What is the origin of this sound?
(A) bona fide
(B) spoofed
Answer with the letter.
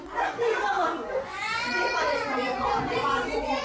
B